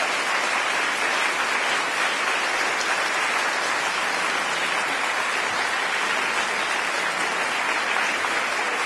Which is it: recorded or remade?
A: recorded